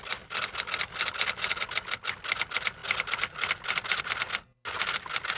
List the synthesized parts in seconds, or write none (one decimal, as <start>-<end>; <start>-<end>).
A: none